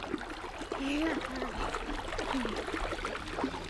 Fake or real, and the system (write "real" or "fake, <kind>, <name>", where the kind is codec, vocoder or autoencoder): real